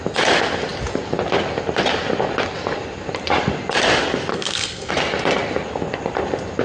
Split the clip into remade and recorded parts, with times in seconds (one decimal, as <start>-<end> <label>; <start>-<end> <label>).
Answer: 0.0-4.3 recorded; 4.3-4.9 remade; 4.9-6.6 recorded